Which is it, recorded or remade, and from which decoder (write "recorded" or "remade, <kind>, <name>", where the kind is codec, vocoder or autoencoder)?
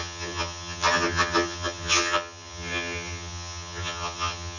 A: remade, vocoder, HiFi-GAN